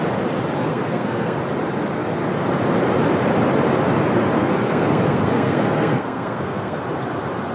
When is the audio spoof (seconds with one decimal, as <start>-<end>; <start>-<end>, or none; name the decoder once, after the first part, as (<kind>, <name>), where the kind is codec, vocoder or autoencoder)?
0.7-1.4 (codec, SNAC); 4.4-6.8